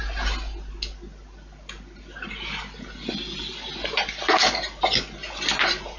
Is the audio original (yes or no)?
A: yes